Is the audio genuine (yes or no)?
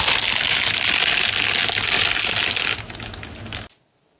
yes